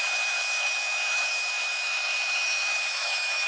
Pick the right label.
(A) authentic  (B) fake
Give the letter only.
B